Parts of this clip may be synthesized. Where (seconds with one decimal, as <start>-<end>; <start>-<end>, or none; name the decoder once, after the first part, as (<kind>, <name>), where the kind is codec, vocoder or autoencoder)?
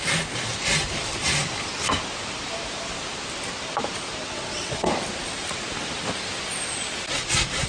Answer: 4.2-4.9 (vocoder, WaveNeXt)